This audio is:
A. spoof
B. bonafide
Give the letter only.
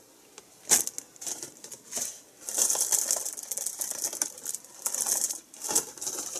B